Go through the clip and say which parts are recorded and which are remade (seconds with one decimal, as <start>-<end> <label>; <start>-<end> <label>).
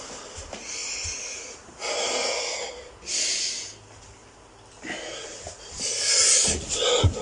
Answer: 0.0-7.2 recorded